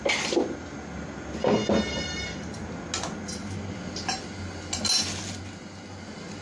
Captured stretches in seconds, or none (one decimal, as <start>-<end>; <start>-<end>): 0.0-6.4